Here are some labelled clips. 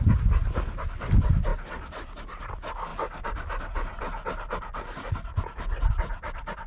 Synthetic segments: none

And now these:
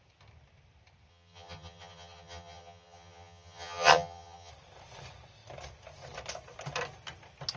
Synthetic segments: 1.1-4.5 (vocoder, HiFi-GAN)

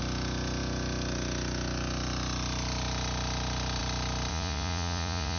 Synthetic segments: 4.3-5.4 (vocoder, Vocos)